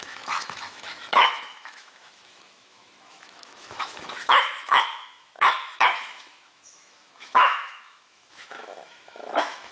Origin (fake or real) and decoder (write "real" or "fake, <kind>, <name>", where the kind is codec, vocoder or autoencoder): fake, autoencoder, DAC-VAE